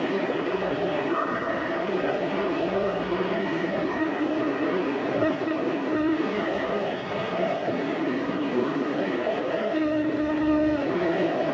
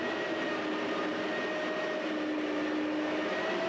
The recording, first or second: second